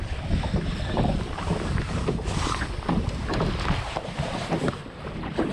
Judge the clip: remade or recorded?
recorded